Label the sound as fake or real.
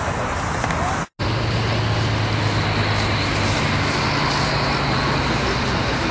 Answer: real